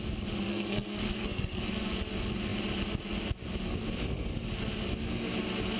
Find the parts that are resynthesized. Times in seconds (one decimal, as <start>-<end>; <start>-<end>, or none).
0.5-1.6